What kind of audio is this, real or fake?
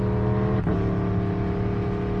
real